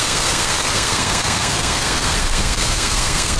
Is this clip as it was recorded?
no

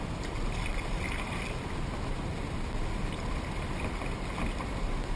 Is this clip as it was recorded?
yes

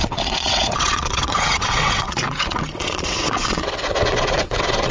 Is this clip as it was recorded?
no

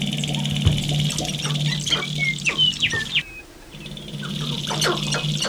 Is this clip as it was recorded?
yes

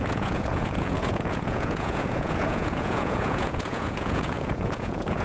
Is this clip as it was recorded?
no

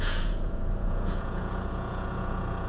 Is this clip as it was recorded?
no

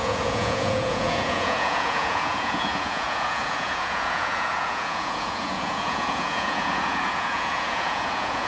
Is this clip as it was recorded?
no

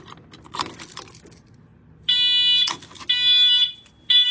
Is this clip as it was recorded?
yes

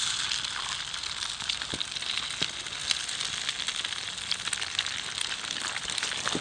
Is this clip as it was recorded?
yes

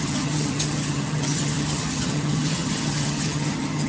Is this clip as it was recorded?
no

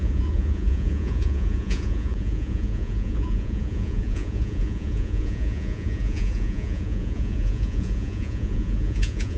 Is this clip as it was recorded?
no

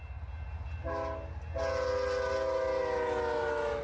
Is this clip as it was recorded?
yes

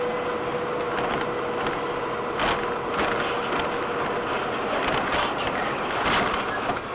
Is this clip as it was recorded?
yes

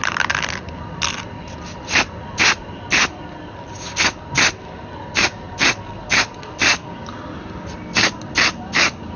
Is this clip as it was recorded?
yes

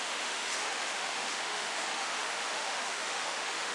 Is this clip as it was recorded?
no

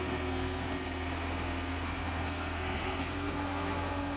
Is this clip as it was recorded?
no